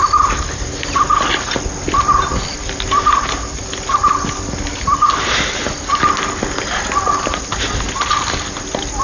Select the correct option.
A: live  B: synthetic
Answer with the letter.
A